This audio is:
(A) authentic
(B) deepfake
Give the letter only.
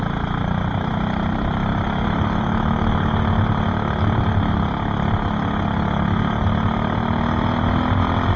A